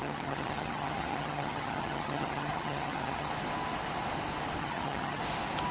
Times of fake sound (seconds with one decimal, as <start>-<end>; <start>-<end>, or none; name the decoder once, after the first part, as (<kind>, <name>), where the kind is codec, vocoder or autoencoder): 0.0-3.3 (vocoder, HiFi-GAN); 4.6-5.2

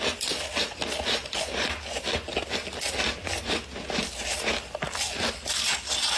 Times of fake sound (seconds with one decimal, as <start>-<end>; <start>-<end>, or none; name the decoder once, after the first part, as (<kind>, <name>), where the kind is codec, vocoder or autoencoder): none

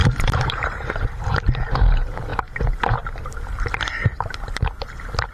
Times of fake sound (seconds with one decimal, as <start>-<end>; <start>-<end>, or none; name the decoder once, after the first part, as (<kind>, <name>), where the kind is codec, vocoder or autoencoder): 0.0-1.1 (vocoder, BigVGAN v2)

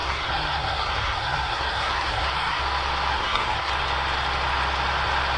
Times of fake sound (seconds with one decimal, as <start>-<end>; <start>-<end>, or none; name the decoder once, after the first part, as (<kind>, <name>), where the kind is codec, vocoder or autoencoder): 0.0-2.6 (codec, SNAC); 3.1-3.7

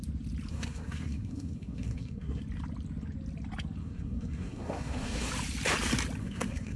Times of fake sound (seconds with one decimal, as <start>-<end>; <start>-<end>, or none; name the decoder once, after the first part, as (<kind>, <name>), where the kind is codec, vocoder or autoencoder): 0.5-2.4 (codec, SNAC); 3.8-5.3; 6.2-6.8

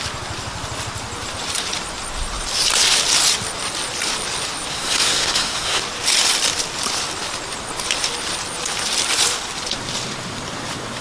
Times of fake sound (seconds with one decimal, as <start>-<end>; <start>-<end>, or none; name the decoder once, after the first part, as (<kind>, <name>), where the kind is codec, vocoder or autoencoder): 4.7-5.8 (codec, SNAC)